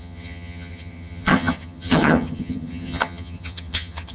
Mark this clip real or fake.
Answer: fake